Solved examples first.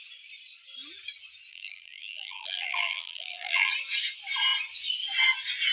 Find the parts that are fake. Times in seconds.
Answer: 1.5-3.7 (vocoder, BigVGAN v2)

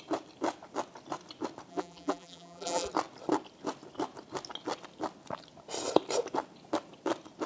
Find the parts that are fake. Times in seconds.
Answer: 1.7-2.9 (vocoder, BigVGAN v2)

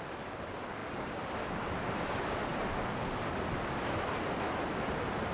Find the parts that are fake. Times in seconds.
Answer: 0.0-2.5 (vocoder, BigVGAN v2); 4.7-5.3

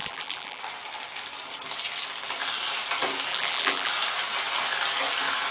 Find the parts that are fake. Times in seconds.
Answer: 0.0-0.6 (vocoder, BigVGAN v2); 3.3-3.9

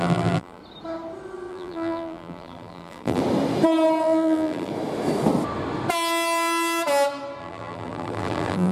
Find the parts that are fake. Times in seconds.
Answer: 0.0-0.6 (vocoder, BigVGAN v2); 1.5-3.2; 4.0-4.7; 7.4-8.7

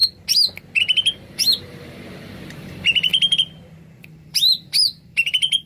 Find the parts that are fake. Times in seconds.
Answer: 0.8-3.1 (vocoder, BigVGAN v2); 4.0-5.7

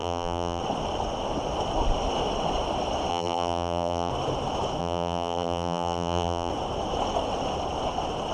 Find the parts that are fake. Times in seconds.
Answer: 0.0-0.6 (vocoder, BigVGAN v2); 3.1-4.1; 4.8-6.5

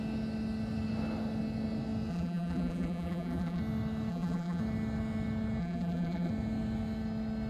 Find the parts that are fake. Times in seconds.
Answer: 2.1-3.6 (vocoder, BigVGAN v2); 4.1-4.6; 5.6-6.3